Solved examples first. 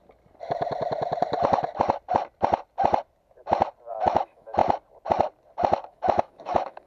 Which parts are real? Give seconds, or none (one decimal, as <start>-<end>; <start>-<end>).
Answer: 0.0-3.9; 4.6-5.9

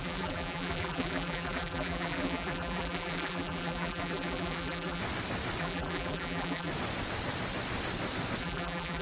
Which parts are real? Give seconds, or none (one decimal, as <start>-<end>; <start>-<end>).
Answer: 5.0-5.6; 6.7-8.4

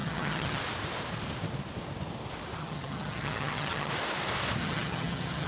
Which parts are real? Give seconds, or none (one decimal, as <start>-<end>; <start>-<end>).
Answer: 0.6-2.6; 3.9-4.6

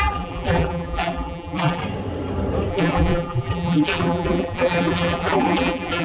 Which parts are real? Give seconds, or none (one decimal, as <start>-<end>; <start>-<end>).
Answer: 1.8-2.7